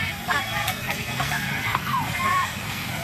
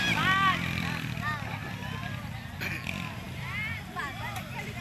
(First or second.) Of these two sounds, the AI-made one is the first